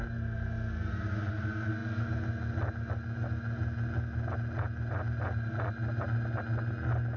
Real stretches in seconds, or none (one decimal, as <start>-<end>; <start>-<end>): 0.0-7.2